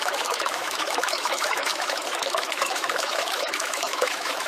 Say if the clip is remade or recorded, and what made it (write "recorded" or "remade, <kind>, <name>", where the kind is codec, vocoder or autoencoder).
remade, autoencoder, DAC-VAE